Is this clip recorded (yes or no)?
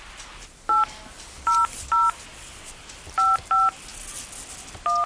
yes